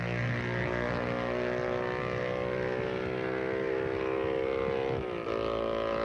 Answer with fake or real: real